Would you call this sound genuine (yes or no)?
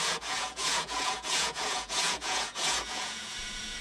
no